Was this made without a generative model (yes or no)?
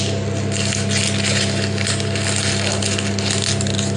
yes